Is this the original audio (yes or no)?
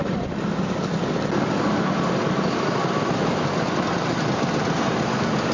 yes